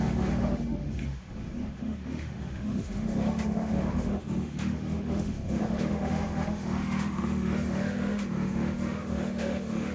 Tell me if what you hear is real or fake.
fake